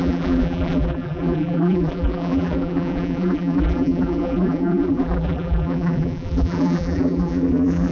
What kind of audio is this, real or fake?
fake